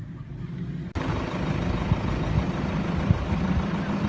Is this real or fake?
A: real